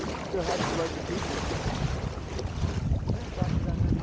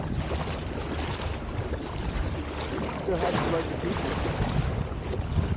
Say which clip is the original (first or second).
second